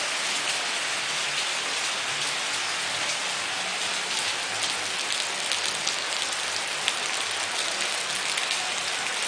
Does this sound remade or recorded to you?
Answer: recorded